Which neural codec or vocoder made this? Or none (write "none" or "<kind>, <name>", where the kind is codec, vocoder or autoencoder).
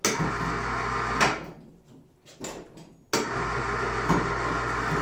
none